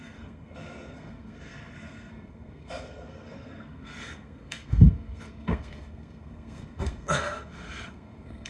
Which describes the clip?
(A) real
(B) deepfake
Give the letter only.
B